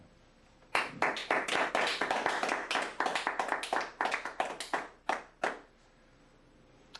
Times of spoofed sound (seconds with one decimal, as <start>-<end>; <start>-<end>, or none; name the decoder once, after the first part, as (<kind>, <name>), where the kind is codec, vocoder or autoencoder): 1.2-1.7 (vocoder, BigVGAN v2)